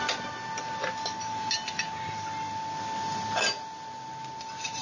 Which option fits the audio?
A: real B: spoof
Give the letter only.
A